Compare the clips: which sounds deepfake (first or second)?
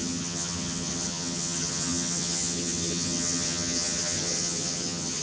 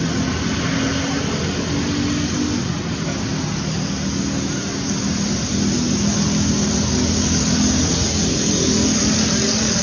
first